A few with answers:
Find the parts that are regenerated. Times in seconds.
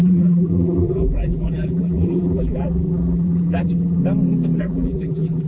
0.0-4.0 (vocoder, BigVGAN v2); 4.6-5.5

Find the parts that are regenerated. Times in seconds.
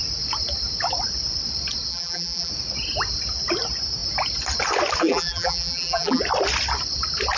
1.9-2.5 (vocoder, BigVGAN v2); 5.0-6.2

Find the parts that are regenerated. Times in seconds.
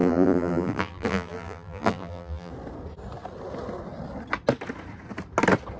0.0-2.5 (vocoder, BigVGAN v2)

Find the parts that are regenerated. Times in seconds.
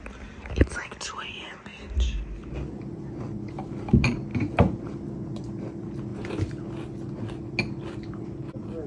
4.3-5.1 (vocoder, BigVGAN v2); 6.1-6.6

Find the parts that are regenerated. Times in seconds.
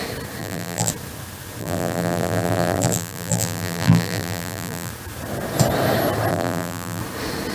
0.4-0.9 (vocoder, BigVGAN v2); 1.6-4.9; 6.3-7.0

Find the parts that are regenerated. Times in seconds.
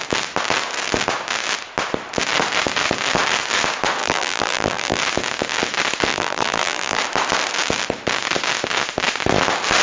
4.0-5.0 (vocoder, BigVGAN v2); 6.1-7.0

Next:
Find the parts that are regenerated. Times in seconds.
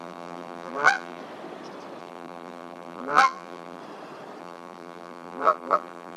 0.0-1.2 (vocoder, BigVGAN v2); 2.0-3.8; 4.4-6.2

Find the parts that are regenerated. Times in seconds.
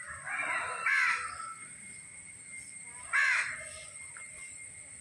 1.6-2.2 (vocoder, BigVGAN v2)